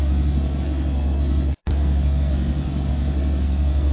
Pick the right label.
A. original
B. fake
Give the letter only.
B